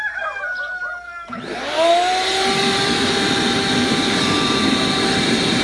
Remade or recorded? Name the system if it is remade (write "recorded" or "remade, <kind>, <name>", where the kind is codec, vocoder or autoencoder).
remade, vocoder, BigVGAN v2